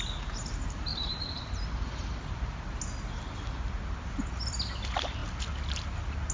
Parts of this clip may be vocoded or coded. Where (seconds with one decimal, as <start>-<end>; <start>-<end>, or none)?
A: 0.9-1.4